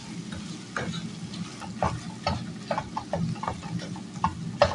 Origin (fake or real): real